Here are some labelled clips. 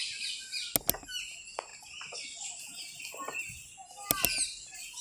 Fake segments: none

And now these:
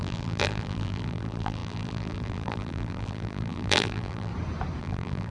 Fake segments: 0.0-4.3 (vocoder, BigVGAN v2); 4.8-5.3

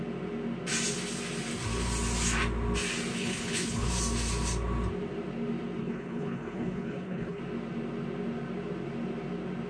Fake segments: 3.1-3.9 (codec, HILCodec); 5.8-7.4